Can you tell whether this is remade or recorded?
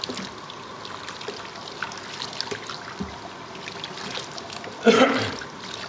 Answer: recorded